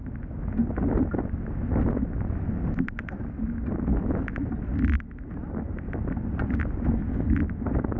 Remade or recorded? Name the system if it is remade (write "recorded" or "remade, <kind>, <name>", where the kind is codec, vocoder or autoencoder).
recorded